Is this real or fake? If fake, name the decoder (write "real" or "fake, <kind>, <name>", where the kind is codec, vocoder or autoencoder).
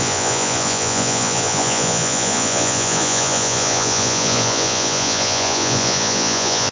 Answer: fake, vocoder, Vocos